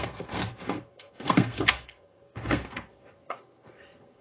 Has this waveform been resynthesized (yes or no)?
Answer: yes